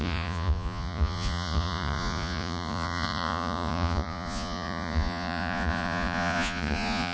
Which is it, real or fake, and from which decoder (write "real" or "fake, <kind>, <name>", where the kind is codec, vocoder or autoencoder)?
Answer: fake, vocoder, Vocos